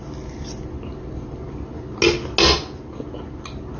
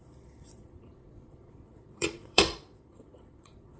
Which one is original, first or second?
first